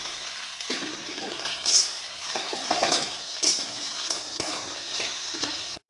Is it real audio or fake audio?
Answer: fake